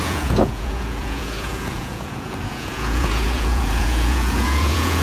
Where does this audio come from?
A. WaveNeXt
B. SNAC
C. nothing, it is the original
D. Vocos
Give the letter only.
D